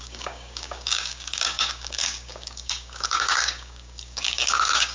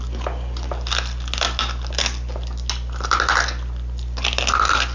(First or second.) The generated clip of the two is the first